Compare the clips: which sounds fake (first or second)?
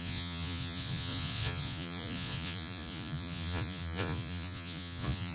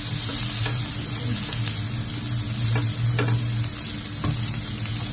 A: first